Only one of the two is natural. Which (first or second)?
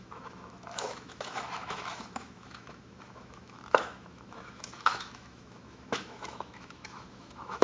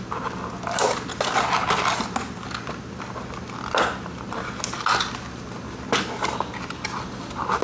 second